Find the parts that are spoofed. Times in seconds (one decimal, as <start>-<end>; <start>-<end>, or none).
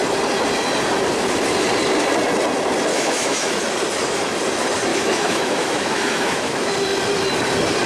2.9-3.6; 4.9-6.7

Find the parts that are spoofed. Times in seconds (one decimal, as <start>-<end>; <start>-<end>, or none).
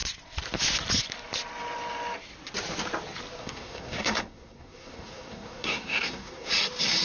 3.4-6.5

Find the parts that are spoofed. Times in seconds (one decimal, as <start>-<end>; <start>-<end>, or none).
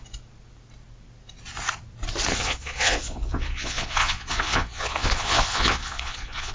2.4-6.5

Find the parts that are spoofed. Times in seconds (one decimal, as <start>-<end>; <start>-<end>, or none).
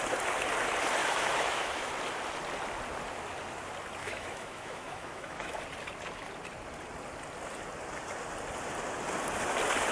1.0-1.9; 4.0-5.6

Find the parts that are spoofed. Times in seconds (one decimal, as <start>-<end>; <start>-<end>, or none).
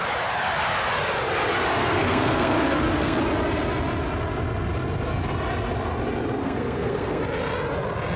1.8-3.2; 6.4-7.2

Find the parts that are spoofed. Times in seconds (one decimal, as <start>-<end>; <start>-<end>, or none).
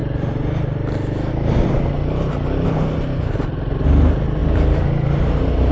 none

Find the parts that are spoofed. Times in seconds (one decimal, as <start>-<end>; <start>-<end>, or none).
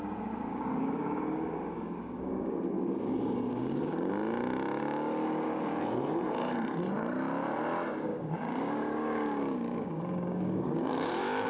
0.5-4.1; 4.8-5.7; 8.1-11.5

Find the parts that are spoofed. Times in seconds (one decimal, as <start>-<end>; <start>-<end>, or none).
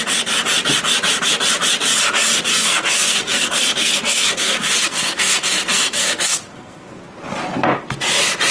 2.5-7.0